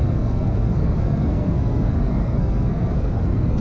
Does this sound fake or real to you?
fake